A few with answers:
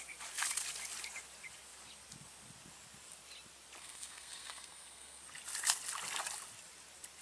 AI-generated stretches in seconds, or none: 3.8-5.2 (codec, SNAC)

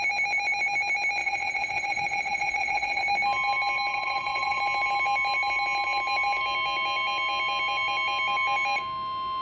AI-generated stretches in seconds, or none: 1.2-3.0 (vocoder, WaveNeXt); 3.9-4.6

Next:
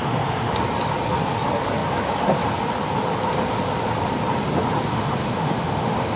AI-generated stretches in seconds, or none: 0.0-0.5 (autoencoder, DAC-VAE); 4.9-6.2